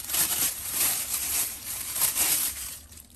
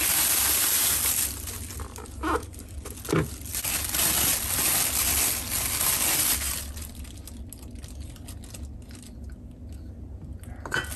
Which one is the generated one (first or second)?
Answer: first